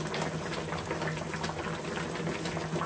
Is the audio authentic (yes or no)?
yes